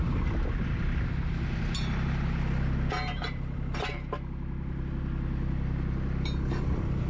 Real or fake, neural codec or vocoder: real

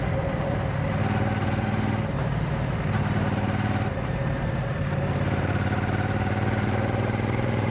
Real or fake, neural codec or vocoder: real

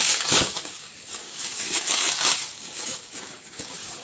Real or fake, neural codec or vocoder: fake, codec, DAC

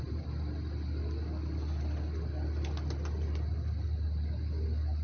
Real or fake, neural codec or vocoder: real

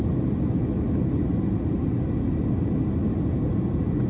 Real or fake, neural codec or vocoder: real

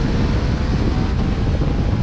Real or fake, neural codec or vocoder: real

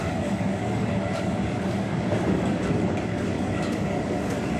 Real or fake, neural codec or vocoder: fake, codec, DAC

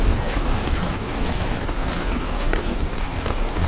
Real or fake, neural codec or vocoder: fake, codec, DAC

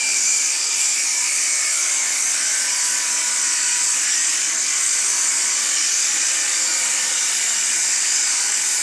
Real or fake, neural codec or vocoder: fake, codec, DAC